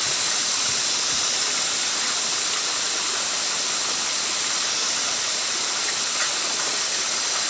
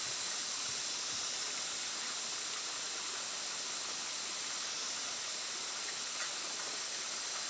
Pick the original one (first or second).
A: second